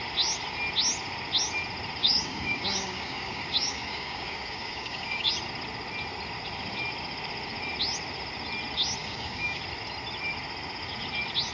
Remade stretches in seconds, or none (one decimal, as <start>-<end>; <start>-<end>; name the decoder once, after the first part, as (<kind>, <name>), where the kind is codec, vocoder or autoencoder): 2.0-5.3 (codec, DAC); 9.0-9.6